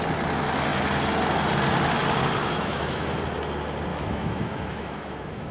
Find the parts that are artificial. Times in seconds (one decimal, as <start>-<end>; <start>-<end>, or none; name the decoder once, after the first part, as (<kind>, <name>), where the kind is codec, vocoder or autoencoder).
2.4-3.2 (autoencoder, DAC-VAE); 3.9-5.5